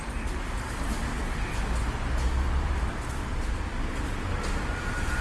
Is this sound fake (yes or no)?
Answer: no